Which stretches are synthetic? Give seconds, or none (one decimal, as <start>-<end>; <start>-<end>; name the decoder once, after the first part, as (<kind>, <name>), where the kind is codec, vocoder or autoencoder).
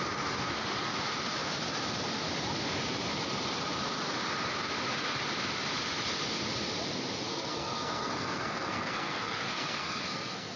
7.3-10.6 (codec, SNAC)